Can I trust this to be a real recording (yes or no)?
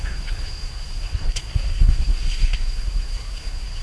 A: no